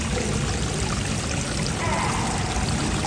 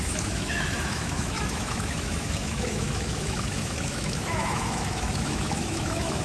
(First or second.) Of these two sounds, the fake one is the second